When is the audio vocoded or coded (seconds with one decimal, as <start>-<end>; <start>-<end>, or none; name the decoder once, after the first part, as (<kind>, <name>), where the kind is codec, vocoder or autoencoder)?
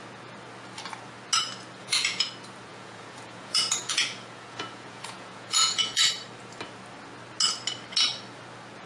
1.8-2.3 (vocoder, Vocos); 2.7-6.1